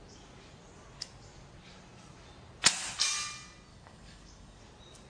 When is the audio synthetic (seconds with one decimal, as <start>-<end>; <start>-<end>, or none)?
3.7-4.6